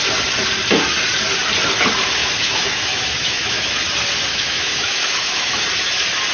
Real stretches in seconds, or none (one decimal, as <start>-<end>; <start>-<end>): 0.0-2.2; 3.7-4.3; 5.6-6.3